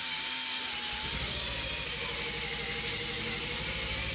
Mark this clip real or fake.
real